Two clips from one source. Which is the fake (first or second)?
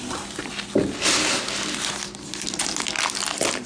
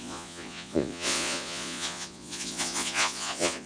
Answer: second